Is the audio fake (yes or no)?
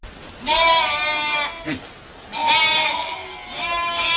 no